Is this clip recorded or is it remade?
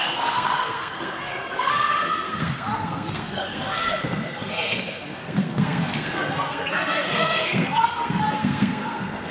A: remade